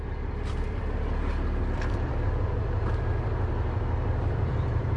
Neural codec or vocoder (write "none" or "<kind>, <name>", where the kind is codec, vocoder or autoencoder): vocoder, BigVGAN v2